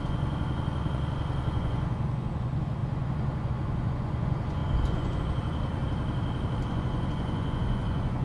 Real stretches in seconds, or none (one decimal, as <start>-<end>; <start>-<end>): 5.8-6.7

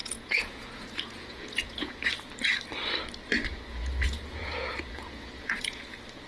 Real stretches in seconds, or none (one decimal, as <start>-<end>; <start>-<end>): 2.1-3.7; 5.8-6.3

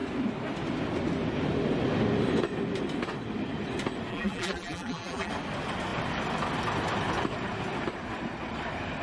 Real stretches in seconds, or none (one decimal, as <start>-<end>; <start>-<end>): 0.0-4.1; 5.3-9.0

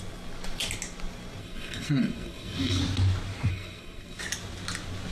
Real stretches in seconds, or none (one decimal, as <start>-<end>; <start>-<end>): 0.0-1.4; 2.8-3.5; 4.2-5.1

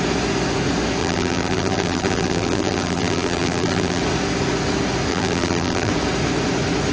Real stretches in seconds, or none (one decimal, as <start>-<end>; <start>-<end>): 0.0-1.0; 4.0-5.1; 5.9-6.9